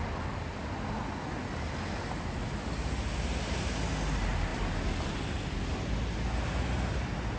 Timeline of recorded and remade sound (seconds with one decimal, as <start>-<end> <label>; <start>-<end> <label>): 0.0-7.4 recorded